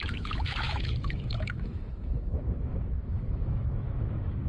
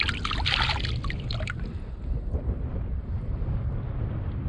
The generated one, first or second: first